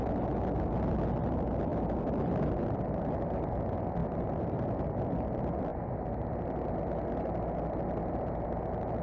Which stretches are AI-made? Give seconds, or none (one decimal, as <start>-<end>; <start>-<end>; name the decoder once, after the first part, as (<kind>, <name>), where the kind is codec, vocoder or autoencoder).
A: 1.7-2.8 (vocoder, BigVGAN v2); 4.0-4.6; 5.7-6.3